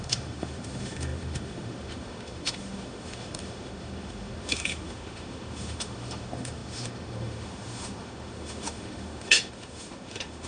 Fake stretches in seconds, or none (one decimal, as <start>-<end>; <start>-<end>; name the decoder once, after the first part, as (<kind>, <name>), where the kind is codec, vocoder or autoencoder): 0.0-10.5 (autoencoder, DAC-VAE)